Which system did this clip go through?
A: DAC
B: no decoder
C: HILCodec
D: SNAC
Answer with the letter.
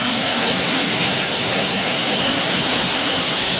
D